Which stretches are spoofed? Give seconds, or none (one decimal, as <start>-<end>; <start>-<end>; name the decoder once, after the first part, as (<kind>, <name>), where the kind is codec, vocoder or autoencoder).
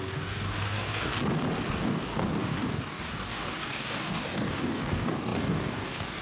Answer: 0.0-1.1 (codec, DAC); 1.7-6.2